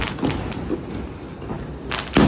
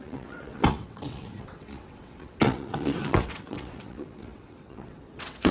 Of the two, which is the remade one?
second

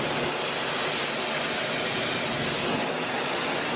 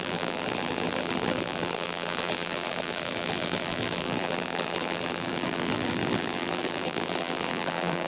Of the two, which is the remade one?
second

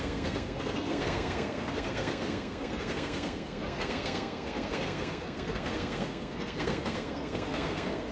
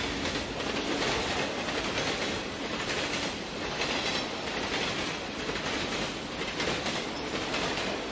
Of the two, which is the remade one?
first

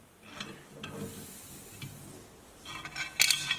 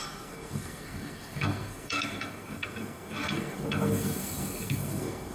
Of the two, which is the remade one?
second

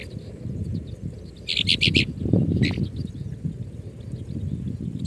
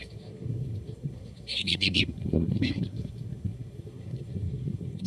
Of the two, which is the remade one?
second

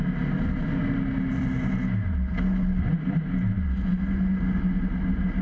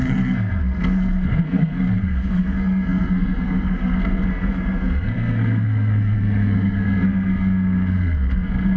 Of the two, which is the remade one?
second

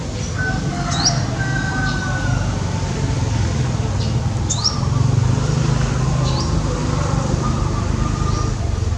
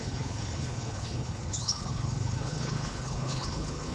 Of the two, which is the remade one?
second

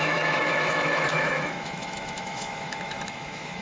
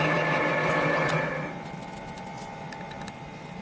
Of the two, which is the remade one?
first